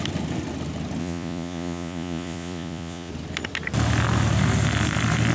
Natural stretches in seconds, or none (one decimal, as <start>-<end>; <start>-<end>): 0.0-1.0; 3.1-5.3